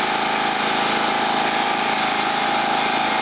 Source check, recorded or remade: recorded